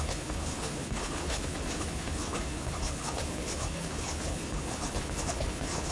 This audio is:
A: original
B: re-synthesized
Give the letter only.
B